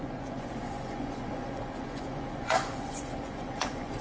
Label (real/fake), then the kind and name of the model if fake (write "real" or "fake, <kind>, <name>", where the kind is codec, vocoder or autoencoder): fake, vocoder, Vocos